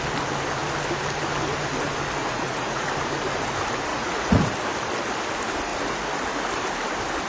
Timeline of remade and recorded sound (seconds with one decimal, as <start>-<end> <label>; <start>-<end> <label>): 0.0-2.2 recorded; 2.2-2.9 remade; 2.9-3.9 recorded; 3.9-4.5 remade; 4.5-7.3 recorded